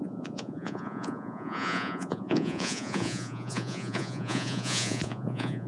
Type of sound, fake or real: fake